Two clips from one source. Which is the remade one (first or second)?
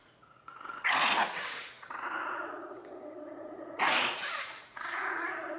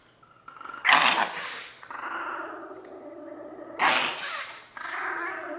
first